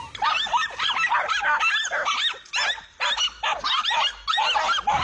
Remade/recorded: recorded